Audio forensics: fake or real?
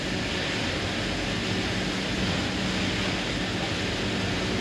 real